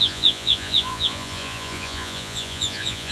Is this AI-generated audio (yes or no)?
yes